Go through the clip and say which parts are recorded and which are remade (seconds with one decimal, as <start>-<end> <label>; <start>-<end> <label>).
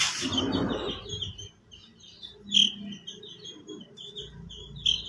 0.0-1.9 remade; 1.9-5.1 recorded